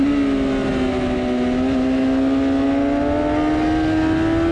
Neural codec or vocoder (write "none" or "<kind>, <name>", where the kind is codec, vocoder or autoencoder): none